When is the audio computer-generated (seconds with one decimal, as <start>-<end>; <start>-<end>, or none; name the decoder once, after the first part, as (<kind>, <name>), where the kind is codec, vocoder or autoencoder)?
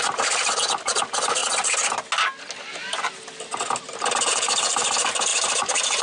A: 0.0-1.4 (vocoder, BigVGAN v2); 4.3-6.0